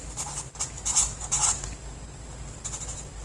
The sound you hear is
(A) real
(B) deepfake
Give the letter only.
A